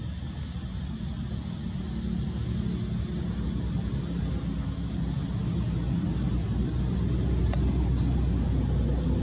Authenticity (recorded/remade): recorded